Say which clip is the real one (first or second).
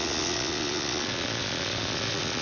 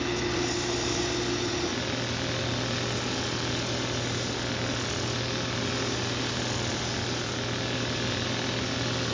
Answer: second